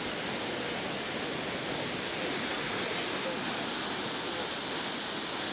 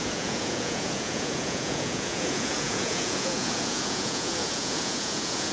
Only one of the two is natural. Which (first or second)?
first